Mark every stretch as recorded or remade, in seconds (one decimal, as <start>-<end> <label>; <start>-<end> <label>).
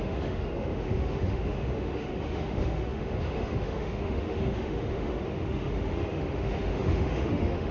0.0-7.7 remade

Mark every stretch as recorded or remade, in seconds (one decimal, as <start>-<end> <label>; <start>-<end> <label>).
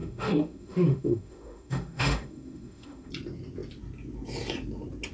0.0-3.1 remade; 3.1-5.1 recorded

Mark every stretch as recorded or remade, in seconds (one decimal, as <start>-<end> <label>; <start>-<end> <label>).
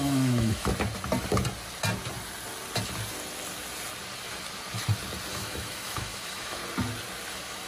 0.0-0.7 remade; 0.7-5.3 recorded; 5.3-6.6 remade; 6.6-7.3 recorded; 7.3-7.7 remade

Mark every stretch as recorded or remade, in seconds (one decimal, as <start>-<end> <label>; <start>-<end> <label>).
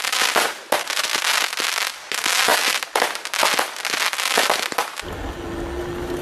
0.0-6.2 recorded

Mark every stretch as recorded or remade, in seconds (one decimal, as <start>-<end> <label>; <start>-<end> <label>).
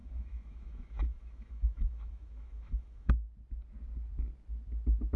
0.0-3.1 remade; 3.1-5.2 recorded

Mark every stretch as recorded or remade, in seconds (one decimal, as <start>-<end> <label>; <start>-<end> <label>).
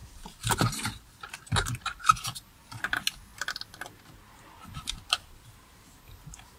0.0-6.6 recorded